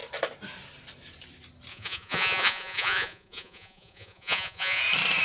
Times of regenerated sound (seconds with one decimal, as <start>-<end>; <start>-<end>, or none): 1.7-4.8